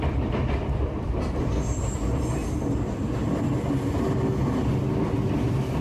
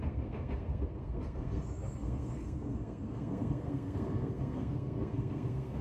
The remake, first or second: second